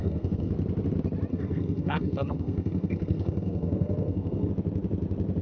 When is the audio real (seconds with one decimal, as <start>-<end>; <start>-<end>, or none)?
0.5-1.3; 4.5-5.4